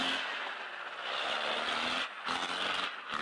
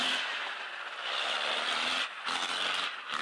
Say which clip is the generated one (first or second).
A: second